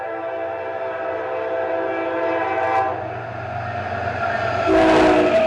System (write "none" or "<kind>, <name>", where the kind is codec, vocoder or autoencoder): none